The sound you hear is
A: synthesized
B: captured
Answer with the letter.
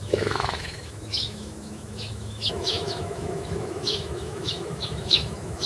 A